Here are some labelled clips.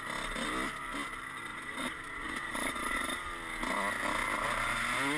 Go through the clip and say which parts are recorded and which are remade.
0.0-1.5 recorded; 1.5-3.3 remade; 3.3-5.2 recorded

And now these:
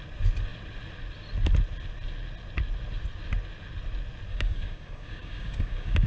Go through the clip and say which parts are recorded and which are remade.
0.0-4.3 recorded; 4.3-6.1 remade

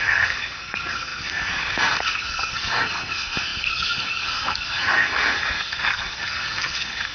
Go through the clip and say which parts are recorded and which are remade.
0.0-7.1 remade